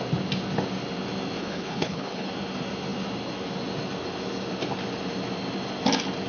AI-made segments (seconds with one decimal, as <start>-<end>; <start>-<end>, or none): 1.4-2.3